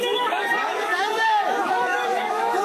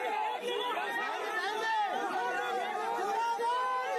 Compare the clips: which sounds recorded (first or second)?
second